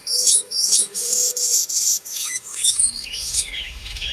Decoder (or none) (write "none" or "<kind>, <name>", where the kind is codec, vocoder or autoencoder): autoencoder, DAC-VAE